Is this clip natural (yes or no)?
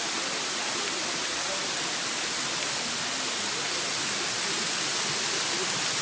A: yes